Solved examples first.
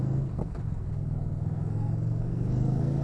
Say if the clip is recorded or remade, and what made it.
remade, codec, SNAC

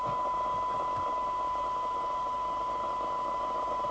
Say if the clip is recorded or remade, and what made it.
recorded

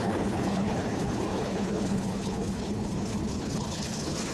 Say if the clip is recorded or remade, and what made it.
remade, codec, HILCodec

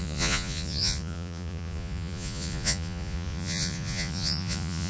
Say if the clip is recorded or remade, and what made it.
remade, vocoder, Vocos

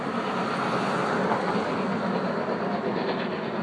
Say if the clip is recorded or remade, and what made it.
recorded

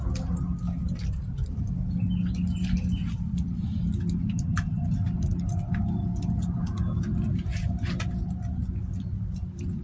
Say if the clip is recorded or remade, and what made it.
recorded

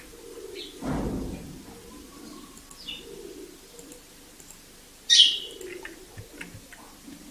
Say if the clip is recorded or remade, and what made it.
recorded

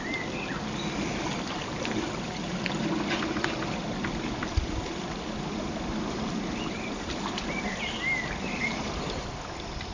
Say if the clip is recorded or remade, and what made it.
recorded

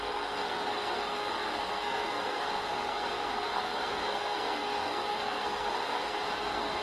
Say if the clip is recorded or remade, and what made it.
remade, codec, SNAC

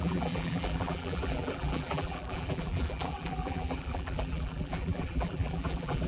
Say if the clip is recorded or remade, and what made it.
remade, vocoder, BigVGAN v2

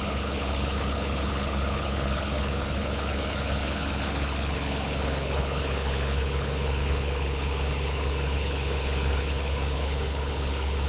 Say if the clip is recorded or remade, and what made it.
remade, codec, HILCodec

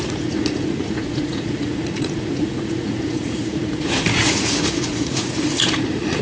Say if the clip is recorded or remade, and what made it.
remade, vocoder, Vocos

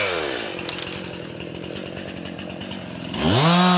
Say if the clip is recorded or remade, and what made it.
recorded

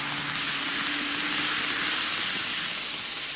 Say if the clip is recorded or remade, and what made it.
recorded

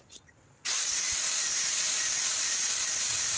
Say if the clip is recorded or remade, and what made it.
remade, vocoder, BigVGAN v2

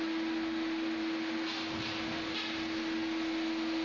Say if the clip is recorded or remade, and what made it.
recorded